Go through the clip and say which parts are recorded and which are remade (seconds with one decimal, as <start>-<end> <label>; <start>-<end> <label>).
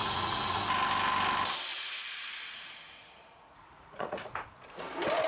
0.0-0.6 remade; 0.6-1.7 recorded; 1.7-4.8 remade; 4.8-5.3 recorded